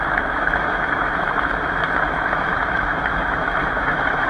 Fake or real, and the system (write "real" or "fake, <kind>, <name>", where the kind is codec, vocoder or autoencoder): fake, autoencoder, DAC-VAE